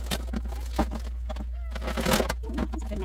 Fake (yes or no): no